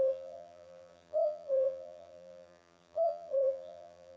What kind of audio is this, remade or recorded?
remade